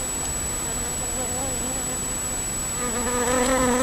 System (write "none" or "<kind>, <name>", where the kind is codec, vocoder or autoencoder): none